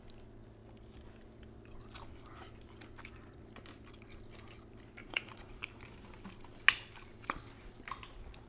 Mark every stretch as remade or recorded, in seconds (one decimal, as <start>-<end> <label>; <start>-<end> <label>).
0.0-5.0 recorded; 5.0-5.6 remade; 5.6-8.5 recorded